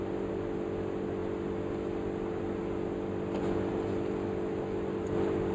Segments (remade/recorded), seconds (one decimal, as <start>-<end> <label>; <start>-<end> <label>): 0.0-5.5 recorded